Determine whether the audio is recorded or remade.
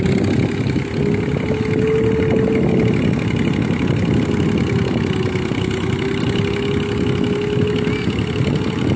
recorded